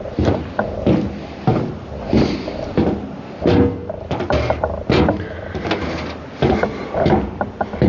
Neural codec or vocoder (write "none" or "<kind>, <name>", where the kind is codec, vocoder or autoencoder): none